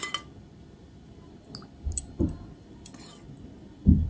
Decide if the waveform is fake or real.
real